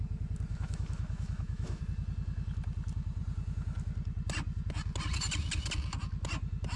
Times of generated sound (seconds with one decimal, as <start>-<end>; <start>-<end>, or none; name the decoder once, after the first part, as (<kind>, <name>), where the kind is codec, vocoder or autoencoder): 0.5-1.8 (autoencoder, DAC-VAE)